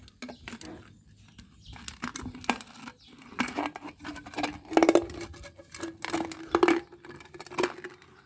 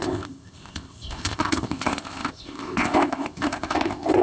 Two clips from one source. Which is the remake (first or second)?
second